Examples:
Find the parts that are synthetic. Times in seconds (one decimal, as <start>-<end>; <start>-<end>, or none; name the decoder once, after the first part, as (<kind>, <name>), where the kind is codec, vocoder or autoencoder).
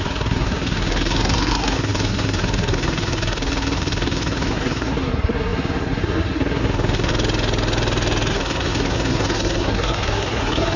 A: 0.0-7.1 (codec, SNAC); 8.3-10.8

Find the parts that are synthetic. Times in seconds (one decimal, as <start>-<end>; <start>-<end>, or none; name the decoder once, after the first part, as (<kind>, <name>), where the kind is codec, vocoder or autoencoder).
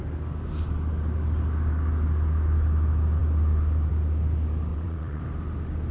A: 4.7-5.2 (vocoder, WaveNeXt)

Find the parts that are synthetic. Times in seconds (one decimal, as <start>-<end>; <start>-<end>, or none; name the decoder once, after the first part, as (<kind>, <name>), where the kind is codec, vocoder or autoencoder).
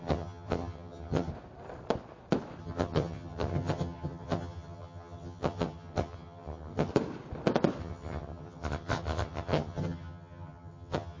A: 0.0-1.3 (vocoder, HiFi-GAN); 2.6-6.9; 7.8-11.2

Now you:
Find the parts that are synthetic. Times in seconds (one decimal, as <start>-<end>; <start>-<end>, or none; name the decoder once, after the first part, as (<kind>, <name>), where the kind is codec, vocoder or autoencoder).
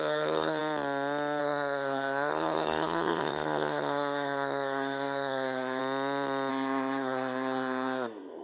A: 0.0-0.6 (codec, SNAC); 1.4-5.8; 6.5-8.4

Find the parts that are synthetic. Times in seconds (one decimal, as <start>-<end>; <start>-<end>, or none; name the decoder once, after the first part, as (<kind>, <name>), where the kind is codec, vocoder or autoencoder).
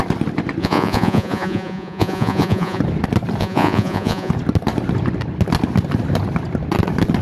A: 0.6-2.8 (vocoder, Vocos); 3.4-4.3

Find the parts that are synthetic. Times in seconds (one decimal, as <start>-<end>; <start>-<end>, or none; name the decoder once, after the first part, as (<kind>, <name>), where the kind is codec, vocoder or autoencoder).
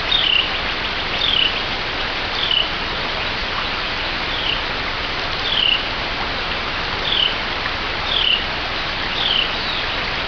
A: none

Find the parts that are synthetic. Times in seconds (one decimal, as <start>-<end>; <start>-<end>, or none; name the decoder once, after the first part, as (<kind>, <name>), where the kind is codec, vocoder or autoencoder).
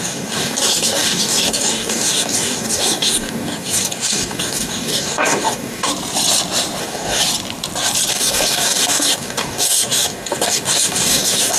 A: 0.0-5.9 (codec, DAC); 6.8-7.2; 8.1-11.6